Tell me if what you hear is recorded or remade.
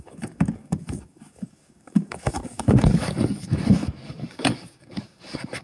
remade